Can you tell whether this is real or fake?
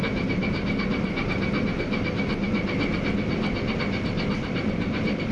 real